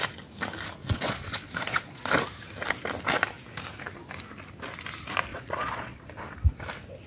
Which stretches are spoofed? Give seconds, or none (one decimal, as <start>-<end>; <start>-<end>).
0.8-2.1; 5.3-6.0